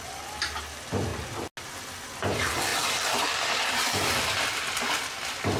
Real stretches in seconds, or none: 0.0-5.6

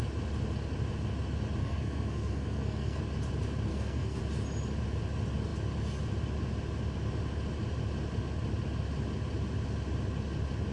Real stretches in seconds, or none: 0.0-1.6; 3.0-3.7; 4.2-10.7

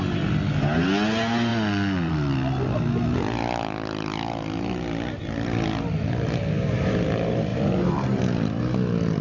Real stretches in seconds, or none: 0.0-7.5; 8.2-9.2

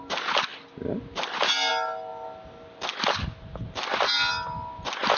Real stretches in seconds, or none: 0.0-5.2

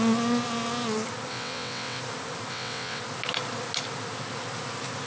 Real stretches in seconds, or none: 0.0-1.3; 2.0-2.5; 3.0-5.1

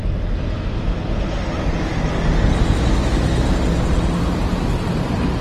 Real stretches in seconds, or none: 0.0-5.4